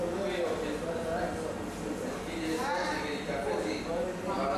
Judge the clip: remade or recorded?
recorded